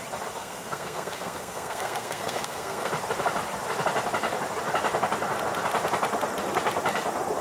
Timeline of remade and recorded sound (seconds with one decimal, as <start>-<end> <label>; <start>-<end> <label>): 0.0-0.4 recorded; 0.4-2.9 remade; 2.9-7.4 recorded